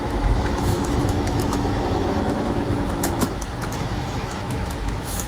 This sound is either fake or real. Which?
fake